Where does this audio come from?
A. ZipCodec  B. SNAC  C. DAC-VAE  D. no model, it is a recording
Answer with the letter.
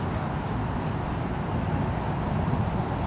D